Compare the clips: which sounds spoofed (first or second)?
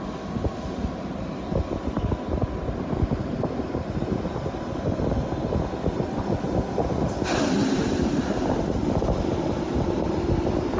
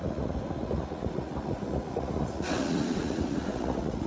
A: second